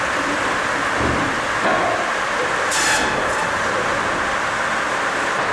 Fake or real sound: real